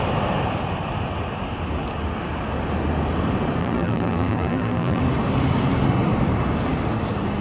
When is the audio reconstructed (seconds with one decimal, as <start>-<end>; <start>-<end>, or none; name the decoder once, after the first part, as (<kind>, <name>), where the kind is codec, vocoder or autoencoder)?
3.6-5.0 (vocoder, BigVGAN v2)

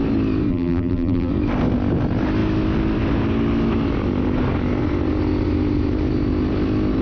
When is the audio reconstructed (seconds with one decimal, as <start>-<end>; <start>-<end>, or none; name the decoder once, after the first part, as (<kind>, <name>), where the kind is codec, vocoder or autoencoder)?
0.5-1.3 (vocoder, BigVGAN v2)